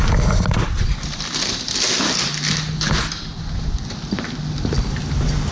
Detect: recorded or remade recorded